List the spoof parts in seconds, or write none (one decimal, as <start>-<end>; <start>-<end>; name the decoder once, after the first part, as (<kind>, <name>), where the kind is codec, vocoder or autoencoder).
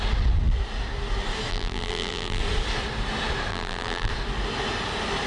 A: 1.5-2.4 (vocoder, BigVGAN v2); 3.5-4.1